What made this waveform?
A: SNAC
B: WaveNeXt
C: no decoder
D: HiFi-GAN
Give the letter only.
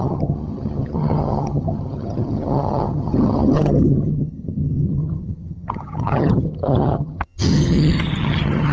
D